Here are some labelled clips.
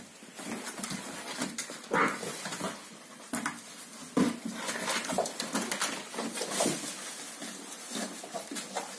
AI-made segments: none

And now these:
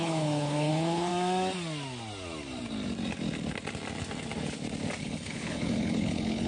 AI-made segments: 0.0-1.1 (codec, HILCodec); 5.0-6.5

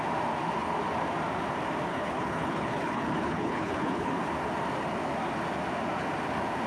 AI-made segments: 1.9-4.1 (codec, HILCodec)

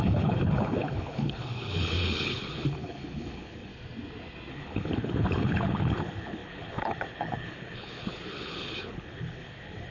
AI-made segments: 0.0-3.7 (codec, HILCodec); 4.5-9.9

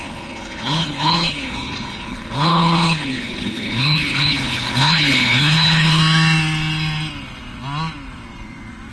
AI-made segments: 0.0-6.0 (codec, HILCodec)

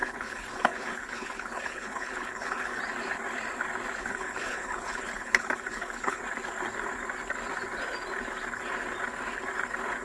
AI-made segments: 0.0-2.8 (codec, HILCodec); 4.0-6.2